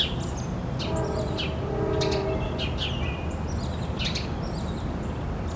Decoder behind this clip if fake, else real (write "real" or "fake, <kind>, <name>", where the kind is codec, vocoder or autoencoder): real